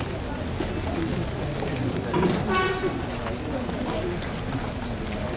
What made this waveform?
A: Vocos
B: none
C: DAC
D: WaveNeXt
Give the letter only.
B